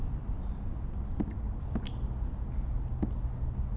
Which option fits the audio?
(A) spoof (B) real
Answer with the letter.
B